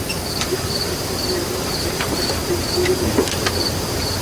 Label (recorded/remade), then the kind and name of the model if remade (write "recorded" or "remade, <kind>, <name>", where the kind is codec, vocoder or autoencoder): remade, vocoder, BigVGAN v2